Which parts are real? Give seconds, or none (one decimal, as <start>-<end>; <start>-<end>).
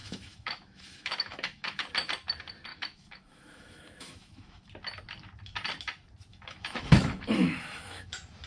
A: 1.9-2.7; 4.7-6.3; 8.1-8.5